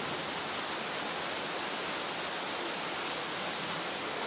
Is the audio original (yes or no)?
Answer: yes